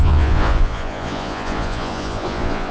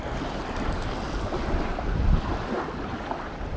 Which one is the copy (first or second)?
first